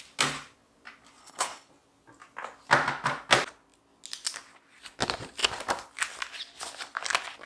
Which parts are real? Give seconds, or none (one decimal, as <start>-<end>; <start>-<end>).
0.0-1.2; 1.7-7.5